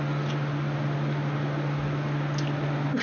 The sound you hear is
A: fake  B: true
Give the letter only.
B